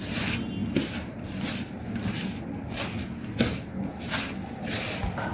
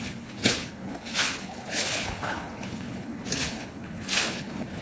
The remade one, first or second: second